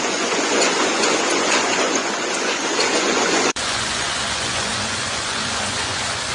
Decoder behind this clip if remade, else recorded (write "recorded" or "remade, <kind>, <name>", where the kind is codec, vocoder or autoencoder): remade, vocoder, Vocos